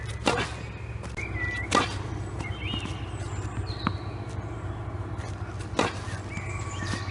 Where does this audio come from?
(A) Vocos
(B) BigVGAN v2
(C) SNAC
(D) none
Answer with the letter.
D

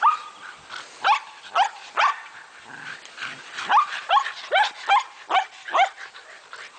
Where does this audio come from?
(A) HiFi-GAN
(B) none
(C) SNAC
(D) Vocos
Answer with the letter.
B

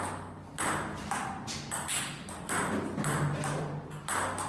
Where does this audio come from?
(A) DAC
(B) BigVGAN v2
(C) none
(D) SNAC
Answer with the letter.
C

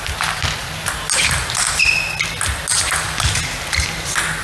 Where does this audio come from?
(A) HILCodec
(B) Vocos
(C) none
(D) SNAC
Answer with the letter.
C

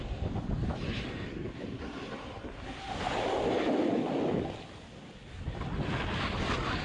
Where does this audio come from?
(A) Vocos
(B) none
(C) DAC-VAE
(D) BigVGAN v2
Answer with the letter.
B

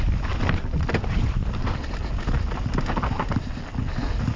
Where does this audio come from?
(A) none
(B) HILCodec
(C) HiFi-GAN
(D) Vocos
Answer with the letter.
A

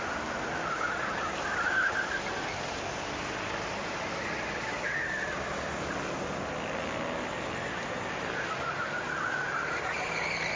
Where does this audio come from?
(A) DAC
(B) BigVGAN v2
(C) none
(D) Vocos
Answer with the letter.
C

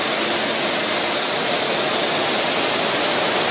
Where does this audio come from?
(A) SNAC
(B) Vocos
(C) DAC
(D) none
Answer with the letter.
D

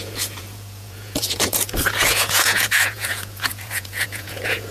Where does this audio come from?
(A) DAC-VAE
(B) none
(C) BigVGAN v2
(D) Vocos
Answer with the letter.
D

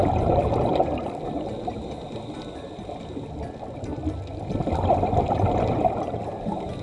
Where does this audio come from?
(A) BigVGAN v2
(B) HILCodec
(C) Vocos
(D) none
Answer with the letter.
D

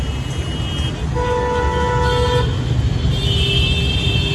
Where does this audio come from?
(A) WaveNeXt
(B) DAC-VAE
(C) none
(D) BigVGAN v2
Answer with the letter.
C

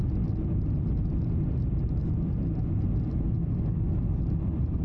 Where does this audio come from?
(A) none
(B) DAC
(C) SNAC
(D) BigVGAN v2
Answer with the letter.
A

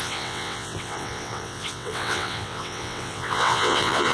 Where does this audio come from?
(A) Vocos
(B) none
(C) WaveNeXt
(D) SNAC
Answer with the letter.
C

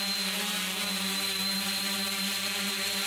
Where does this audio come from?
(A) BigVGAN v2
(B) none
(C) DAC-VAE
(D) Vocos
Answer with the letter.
B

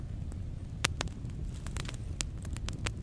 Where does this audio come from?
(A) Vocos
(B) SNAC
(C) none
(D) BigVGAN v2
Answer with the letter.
C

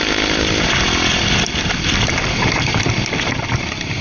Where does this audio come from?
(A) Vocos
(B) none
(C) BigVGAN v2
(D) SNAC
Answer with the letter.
B